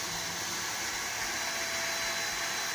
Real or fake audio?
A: real